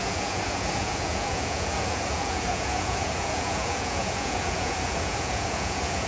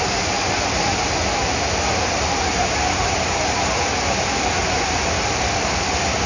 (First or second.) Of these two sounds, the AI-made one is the first